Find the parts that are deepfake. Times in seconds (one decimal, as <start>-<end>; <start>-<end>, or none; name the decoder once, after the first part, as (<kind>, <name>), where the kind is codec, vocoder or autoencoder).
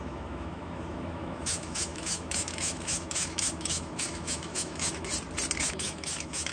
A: 0.0-5.1 (autoencoder, DAC-VAE); 5.6-6.5